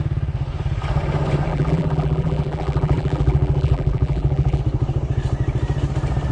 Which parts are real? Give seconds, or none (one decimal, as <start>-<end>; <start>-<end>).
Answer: 0.0-1.5; 4.6-6.3